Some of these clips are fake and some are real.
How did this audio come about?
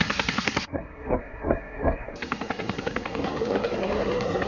fake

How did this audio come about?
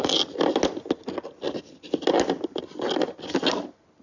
real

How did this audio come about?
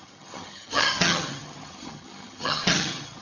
fake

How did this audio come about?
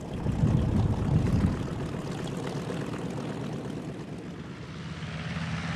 real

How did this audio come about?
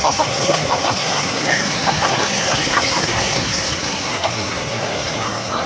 fake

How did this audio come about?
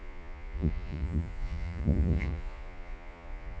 fake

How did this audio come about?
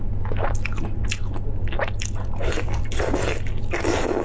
real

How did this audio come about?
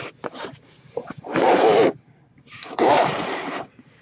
fake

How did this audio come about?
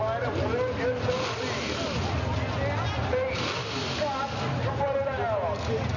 real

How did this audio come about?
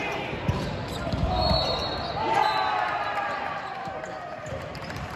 fake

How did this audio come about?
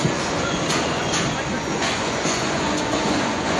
fake